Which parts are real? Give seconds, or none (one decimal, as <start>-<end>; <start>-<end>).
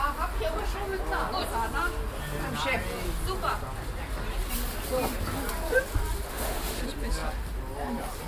0.0-6.3; 6.8-8.3